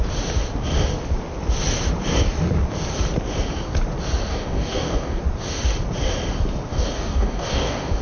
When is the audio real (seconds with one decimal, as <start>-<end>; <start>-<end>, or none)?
0.0-4.3; 5.2-6.7